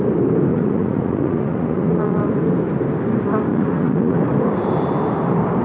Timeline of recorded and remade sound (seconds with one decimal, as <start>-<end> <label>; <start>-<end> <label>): 0.0-0.5 recorded; 0.5-2.2 remade; 2.2-3.5 recorded; 3.5-4.2 remade; 4.2-5.6 recorded

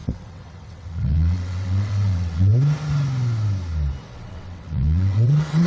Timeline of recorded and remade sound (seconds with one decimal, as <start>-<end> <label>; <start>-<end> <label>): 0.0-2.5 remade; 2.5-4.0 recorded; 4.0-5.7 remade

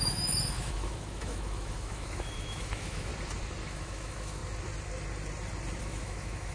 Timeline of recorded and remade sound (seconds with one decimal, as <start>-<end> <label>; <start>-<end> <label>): 0.0-3.1 remade; 3.1-3.7 recorded; 3.7-4.4 remade; 4.4-5.8 recorded; 5.8-6.5 remade

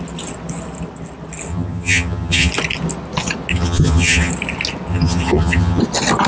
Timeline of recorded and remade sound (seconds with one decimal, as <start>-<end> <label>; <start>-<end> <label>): 0.0-1.5 recorded; 1.5-2.5 remade; 2.5-3.5 recorded; 3.5-4.3 remade; 4.3-4.9 recorded; 4.9-5.8 remade; 5.8-6.3 recorded

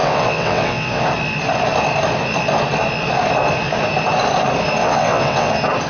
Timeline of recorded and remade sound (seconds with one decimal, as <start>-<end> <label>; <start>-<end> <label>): 0.0-1.0 remade; 1.0-4.8 recorded; 4.8-5.5 remade; 5.5-5.9 recorded

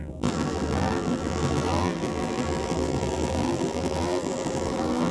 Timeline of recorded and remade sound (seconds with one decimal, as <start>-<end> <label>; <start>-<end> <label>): 0.0-5.1 remade

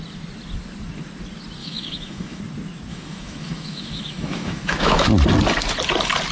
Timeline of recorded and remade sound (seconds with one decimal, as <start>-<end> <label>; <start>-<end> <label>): 0.0-1.6 recorded; 1.6-2.4 remade; 2.4-2.9 recorded; 2.9-5.1 remade; 5.1-6.3 recorded